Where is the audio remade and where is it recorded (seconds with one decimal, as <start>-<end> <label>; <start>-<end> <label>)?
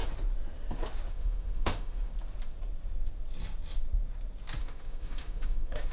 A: 0.0-1.1 recorded; 1.1-2.1 remade; 2.1-4.6 recorded; 4.6-5.9 remade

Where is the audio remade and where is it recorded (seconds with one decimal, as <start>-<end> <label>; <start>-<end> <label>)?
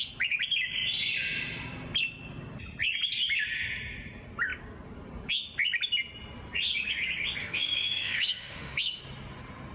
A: 0.0-7.4 recorded; 7.4-9.0 remade; 9.0-9.7 recorded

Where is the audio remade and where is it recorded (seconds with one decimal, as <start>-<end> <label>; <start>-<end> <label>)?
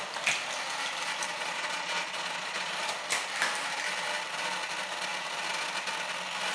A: 0.0-1.3 recorded; 1.3-2.7 remade; 2.7-6.5 recorded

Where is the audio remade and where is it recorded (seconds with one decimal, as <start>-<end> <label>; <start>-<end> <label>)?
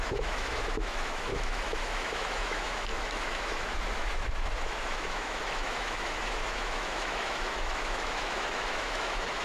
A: 0.0-9.4 remade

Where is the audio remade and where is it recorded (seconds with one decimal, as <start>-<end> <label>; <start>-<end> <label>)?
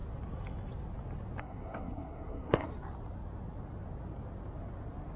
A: 0.0-1.4 recorded; 1.4-2.7 remade; 2.7-5.2 recorded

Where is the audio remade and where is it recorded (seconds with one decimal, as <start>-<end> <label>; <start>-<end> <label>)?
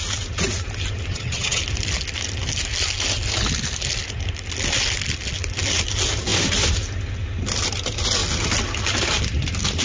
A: 0.0-1.1 recorded; 1.1-1.6 remade; 1.6-9.8 recorded